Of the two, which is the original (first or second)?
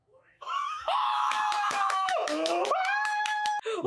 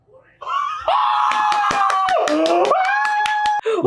second